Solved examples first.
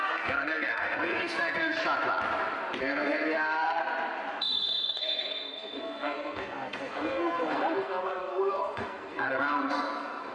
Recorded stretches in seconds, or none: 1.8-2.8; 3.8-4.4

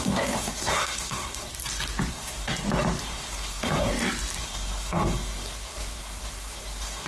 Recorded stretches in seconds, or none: 1.5-2.1; 2.5-3.0; 3.9-4.4

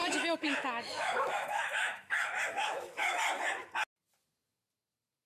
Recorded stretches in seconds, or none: 3.2-5.3